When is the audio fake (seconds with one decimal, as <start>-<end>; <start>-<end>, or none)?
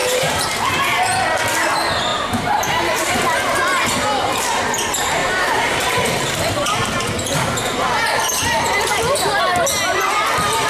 0.0-0.8; 2.1-3.6; 5.2-9.4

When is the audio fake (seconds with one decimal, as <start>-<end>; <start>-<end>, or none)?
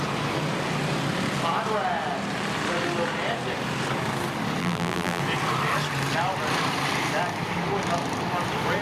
4.6-5.2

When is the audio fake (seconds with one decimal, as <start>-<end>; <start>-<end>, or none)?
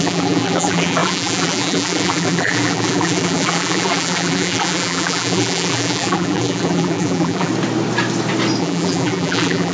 0.0-7.5; 8.6-9.7